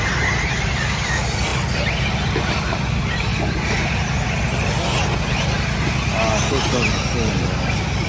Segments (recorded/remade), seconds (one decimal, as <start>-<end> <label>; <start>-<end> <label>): 0.0-8.1 recorded